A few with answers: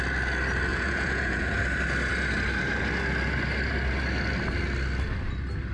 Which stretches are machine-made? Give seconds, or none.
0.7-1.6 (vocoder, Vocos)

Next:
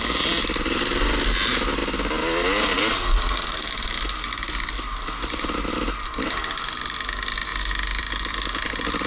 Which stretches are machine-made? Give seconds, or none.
none